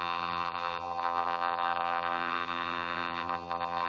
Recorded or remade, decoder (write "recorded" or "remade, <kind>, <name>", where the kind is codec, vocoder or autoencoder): remade, vocoder, BigVGAN v2